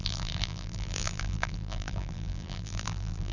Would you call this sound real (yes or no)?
no